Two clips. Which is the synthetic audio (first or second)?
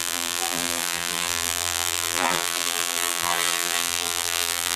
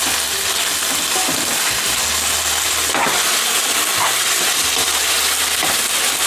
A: first